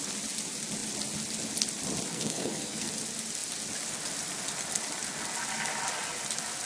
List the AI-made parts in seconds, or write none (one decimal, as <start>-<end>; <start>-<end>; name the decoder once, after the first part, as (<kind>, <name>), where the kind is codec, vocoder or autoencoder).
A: 2.1-2.9 (codec, SNAC)